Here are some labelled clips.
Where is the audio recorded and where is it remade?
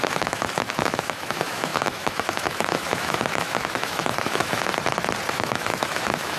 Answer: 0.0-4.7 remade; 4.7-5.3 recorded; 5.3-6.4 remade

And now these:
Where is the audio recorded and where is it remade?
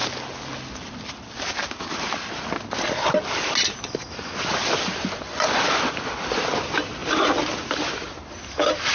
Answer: 0.0-8.9 recorded